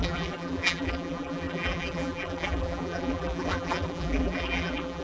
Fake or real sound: fake